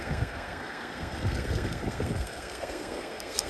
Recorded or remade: remade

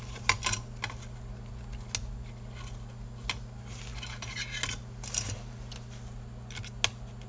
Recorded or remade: recorded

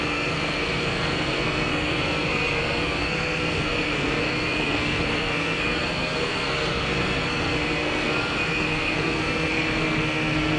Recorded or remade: remade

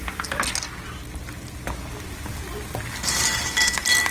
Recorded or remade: recorded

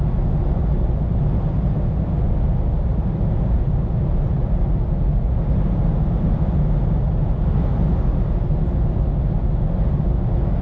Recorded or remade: recorded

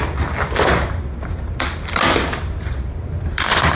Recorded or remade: recorded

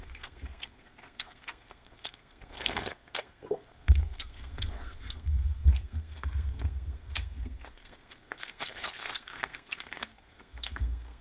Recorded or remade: remade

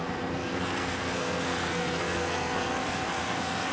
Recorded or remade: remade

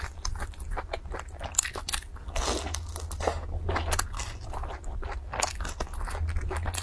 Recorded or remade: recorded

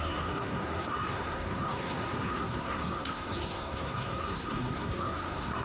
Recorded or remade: remade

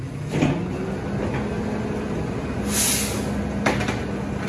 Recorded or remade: recorded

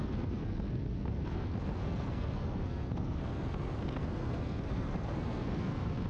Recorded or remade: remade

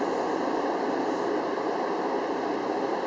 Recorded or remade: recorded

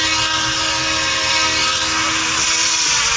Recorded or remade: recorded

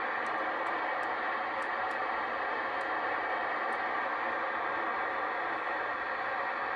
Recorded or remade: recorded